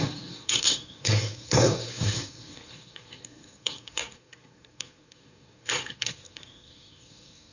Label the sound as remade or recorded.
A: remade